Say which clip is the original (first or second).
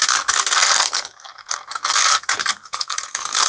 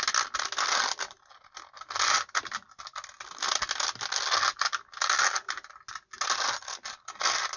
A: second